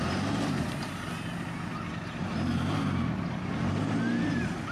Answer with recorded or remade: recorded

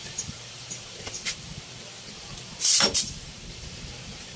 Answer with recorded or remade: remade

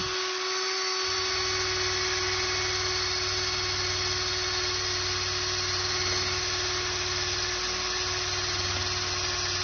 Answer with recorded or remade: recorded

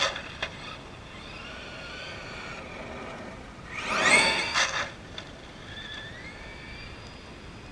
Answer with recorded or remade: remade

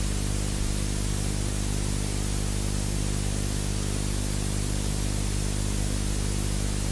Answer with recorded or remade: recorded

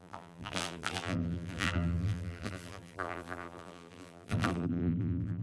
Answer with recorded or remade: remade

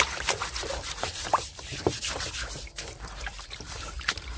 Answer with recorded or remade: remade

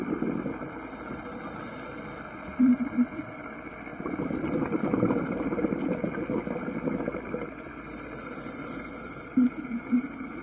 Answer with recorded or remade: recorded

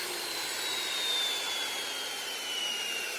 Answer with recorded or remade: remade